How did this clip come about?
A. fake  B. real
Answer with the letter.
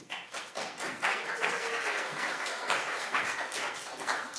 A